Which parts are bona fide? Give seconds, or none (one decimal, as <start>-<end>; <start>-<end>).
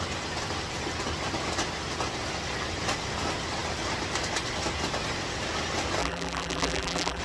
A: 0.0-6.0